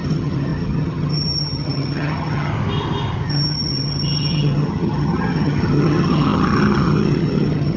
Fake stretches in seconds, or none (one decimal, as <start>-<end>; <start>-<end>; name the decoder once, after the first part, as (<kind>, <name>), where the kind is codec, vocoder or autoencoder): 0.0-2.5 (vocoder, HiFi-GAN); 3.3-7.8